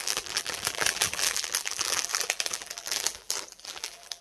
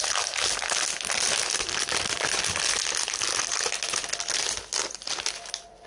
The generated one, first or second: first